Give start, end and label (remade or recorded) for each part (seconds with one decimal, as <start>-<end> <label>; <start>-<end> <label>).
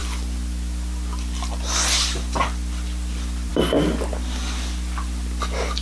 0.0-5.8 recorded